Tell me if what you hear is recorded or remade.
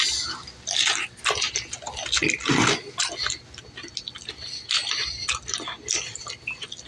recorded